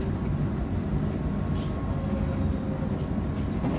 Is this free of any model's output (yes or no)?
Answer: yes